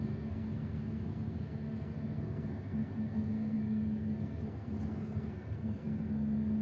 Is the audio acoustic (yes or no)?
no